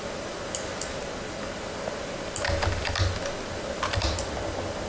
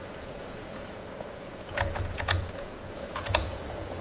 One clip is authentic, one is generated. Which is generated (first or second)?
second